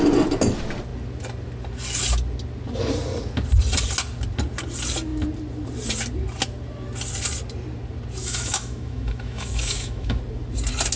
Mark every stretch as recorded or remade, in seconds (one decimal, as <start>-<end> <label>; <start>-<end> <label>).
0.0-8.2 recorded; 8.2-10.2 remade; 10.2-11.0 recorded